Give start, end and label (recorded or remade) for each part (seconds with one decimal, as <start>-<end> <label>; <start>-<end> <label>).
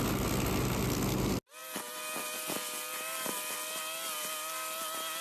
0.0-5.2 recorded